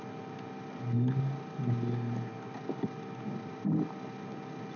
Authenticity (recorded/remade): recorded